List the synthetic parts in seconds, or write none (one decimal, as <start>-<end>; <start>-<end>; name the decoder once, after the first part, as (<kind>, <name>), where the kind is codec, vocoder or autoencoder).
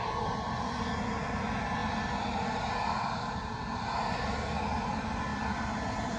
none